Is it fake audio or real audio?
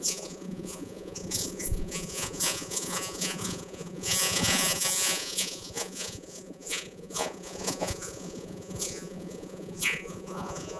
fake